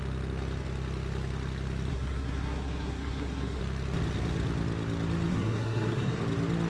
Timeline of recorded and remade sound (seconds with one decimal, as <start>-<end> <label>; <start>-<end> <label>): 0.0-1.9 recorded; 1.9-3.6 remade; 3.6-5.3 recorded; 5.3-6.2 remade; 6.2-6.7 recorded